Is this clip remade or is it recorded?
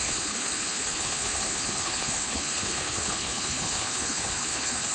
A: remade